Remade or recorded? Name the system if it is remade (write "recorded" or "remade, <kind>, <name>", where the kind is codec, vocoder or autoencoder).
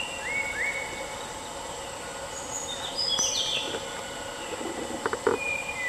recorded